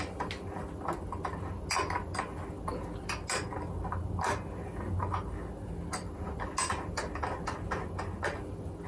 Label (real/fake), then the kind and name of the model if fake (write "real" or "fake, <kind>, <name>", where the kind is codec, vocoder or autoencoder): real